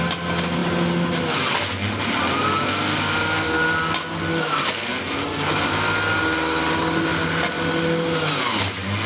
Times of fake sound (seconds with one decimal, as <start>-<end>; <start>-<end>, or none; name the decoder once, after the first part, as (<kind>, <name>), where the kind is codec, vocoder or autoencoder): none